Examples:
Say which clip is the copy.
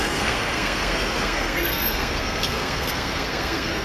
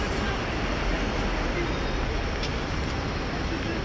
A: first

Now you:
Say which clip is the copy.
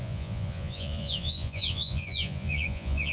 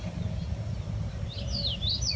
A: first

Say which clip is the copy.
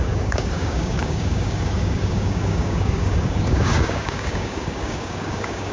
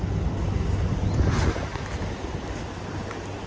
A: first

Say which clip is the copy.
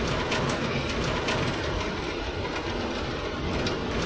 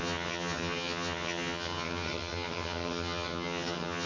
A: second